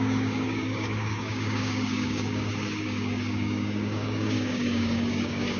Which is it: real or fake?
fake